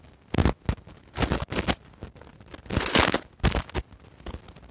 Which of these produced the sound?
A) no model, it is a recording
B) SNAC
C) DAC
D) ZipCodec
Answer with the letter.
A